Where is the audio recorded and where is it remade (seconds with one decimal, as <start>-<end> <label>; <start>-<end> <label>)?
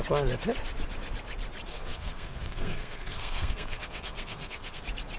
0.0-1.7 recorded; 1.7-4.8 remade; 4.8-5.2 recorded